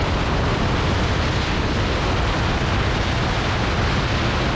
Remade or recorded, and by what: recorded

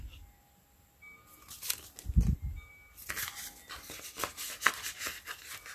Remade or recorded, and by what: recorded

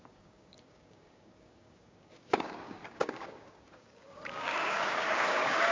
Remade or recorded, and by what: remade, codec, DAC